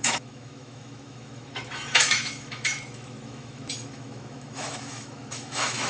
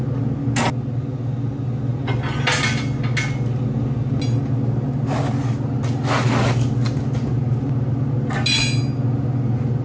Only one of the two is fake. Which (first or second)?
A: first